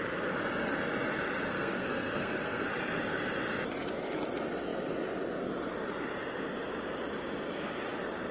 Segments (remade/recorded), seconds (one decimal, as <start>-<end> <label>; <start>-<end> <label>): 0.0-1.5 recorded; 1.5-2.7 remade; 2.7-8.3 recorded